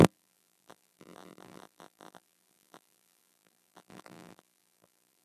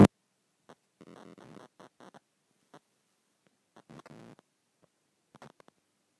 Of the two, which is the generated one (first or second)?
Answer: first